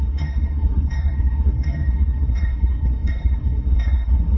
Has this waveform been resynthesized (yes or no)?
yes